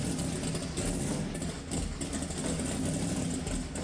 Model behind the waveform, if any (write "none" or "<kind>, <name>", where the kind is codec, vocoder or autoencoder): none